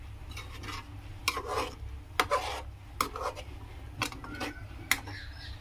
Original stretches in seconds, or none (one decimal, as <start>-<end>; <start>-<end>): 0.0-5.6